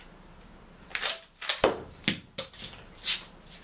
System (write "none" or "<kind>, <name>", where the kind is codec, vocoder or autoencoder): none